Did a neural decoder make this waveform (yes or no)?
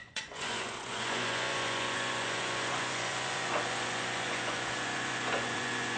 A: yes